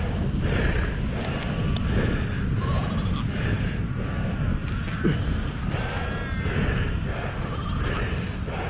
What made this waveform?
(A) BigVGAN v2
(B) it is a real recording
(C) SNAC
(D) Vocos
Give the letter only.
B